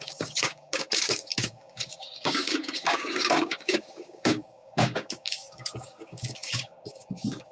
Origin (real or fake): fake